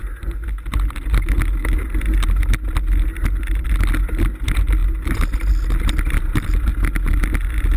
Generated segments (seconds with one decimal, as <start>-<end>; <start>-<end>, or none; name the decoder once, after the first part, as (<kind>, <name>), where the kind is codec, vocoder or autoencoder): none